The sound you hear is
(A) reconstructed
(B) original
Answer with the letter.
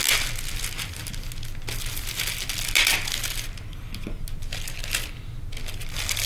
B